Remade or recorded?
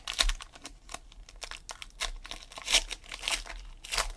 recorded